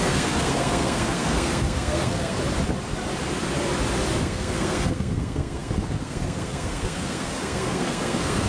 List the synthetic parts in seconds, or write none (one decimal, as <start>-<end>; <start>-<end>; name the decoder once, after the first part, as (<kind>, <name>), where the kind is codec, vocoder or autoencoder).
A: 0.0-2.4 (codec, SNAC); 4.2-8.5